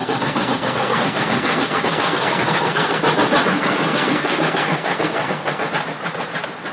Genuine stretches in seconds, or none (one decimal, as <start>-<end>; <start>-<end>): 3.0-3.5; 5.7-6.7